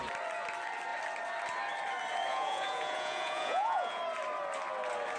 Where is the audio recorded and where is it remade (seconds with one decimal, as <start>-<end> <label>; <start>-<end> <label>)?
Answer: 0.0-2.3 recorded; 2.3-4.0 remade; 4.0-5.2 recorded